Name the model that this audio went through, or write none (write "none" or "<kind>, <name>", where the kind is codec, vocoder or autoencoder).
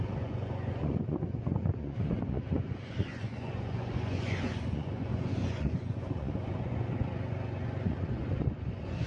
vocoder, Vocos